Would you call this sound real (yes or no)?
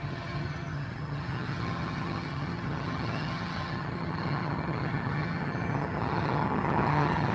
no